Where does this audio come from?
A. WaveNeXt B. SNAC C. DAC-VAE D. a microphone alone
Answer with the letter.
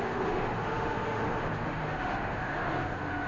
C